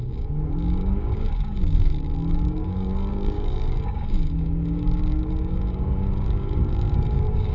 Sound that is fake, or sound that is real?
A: fake